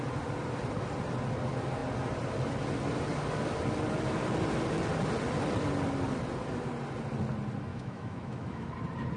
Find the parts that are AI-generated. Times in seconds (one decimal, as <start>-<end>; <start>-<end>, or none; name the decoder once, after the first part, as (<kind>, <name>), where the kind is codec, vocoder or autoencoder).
7.7-8.7 (autoencoder, DAC-VAE)